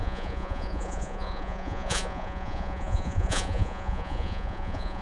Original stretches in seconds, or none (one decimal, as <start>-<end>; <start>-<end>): none